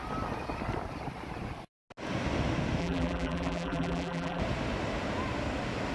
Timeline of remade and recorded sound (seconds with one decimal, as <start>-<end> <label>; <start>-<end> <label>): 0.0-2.8 recorded; 2.8-4.4 remade; 4.4-5.9 recorded